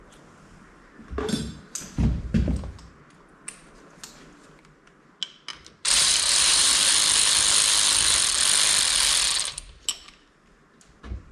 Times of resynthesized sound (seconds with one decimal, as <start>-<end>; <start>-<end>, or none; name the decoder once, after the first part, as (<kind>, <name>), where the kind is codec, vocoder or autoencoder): 5.5-6.8 (vocoder, BigVGAN v2)